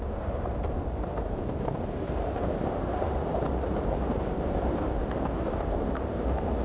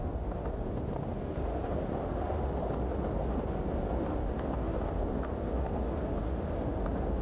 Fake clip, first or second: first